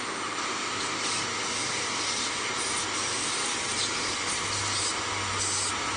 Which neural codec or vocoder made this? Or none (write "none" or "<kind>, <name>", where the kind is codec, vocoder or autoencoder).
none